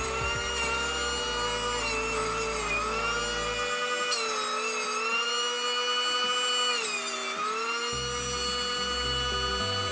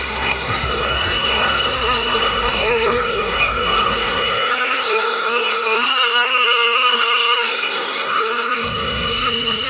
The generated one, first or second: second